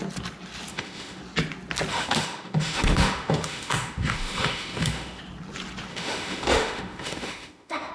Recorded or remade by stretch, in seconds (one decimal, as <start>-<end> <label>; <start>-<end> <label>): 0.0-0.7 recorded; 0.7-1.2 remade; 1.2-1.9 recorded; 1.9-5.2 remade; 5.2-5.9 recorded; 5.9-7.9 remade